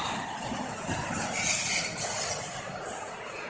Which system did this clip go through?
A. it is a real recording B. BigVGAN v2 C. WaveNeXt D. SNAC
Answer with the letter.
A